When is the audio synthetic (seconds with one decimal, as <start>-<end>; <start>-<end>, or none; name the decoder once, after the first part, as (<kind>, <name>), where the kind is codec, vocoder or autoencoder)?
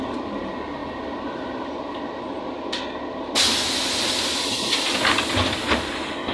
none